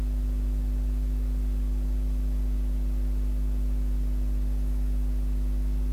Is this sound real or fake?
real